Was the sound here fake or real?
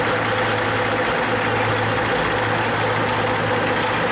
real